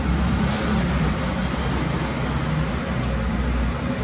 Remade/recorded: recorded